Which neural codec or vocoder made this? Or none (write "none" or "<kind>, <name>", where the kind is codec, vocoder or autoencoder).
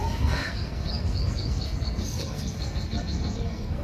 codec, SNAC